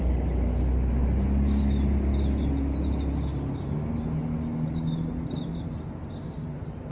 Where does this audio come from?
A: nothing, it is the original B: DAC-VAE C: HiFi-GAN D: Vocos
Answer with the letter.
A